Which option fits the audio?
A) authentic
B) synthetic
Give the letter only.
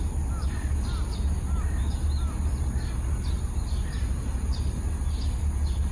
A